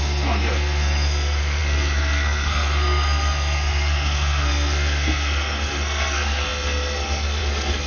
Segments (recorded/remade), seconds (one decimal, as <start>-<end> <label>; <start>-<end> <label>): 0.0-7.9 remade